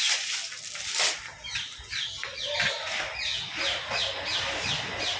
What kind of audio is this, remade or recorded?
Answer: recorded